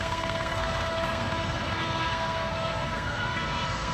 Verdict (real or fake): fake